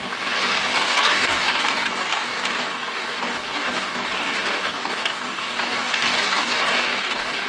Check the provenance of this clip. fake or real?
fake